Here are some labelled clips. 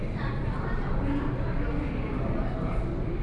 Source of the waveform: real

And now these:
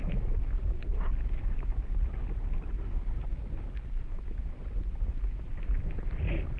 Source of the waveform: real